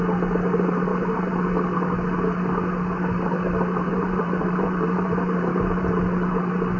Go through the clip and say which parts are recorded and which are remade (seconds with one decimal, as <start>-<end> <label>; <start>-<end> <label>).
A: 0.0-0.9 recorded; 0.9-1.4 remade; 1.4-3.9 recorded; 3.9-5.9 remade; 5.9-6.8 recorded